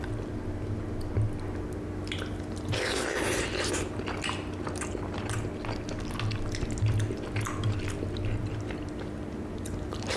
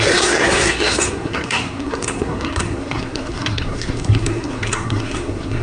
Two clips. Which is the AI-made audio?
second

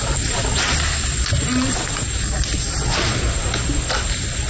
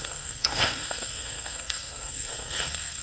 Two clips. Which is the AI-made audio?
second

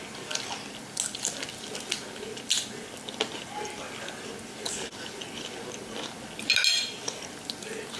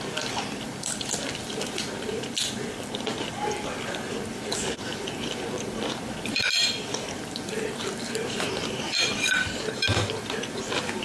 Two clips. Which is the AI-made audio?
second